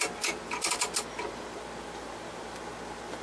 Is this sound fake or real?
real